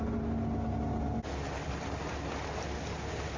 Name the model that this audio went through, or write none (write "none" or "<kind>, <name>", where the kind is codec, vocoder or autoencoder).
none